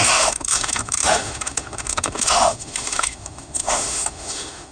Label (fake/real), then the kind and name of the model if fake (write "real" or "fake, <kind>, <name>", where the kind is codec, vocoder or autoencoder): fake, autoencoder, DAC-VAE